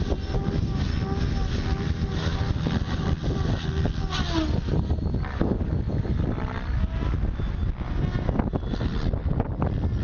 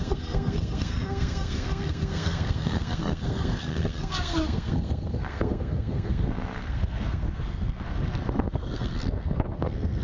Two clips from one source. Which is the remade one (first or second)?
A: second